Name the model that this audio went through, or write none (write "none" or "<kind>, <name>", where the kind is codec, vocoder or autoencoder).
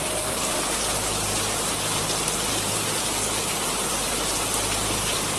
vocoder, BigVGAN v2